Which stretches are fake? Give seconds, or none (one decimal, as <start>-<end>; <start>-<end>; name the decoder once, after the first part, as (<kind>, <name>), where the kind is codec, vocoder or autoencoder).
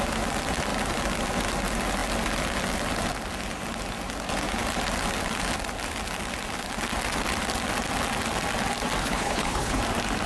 9.0-9.8 (codec, HILCodec)